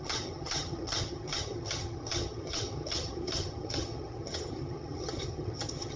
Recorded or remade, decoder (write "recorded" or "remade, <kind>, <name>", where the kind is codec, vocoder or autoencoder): remade, vocoder, HiFi-GAN